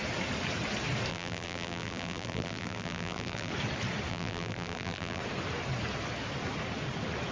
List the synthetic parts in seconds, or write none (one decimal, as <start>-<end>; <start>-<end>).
1.1-3.5; 4.1-5.2